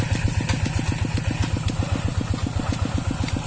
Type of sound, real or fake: real